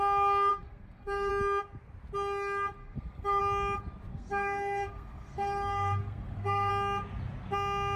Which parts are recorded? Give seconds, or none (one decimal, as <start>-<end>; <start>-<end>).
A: 0.0-0.5; 1.3-2.8; 3.4-4.1; 6.7-8.0